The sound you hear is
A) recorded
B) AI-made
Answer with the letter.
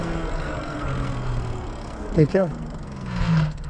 B